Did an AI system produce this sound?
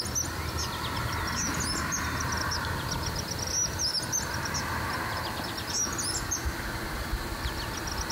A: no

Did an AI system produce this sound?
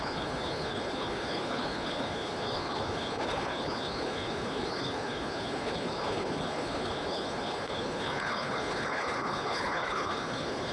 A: yes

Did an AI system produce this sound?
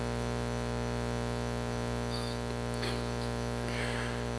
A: no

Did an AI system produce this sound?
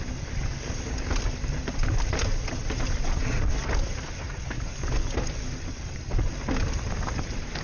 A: no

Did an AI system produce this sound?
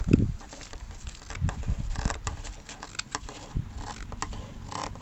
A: no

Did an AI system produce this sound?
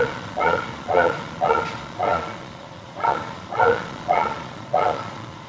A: yes